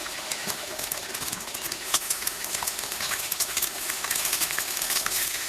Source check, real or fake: fake